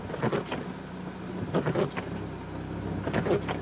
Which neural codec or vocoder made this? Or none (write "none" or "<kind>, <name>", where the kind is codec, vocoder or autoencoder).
none